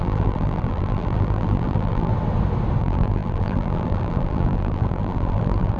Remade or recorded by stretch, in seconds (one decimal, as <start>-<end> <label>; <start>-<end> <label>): 0.0-2.1 remade; 2.1-2.8 recorded; 2.8-5.8 remade